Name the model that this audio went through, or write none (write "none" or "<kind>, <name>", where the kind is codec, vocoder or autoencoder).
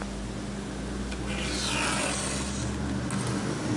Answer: none